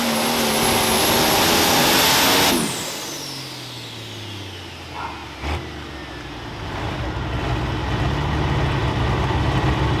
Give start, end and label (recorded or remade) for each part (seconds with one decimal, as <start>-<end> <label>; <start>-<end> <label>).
0.0-10.0 recorded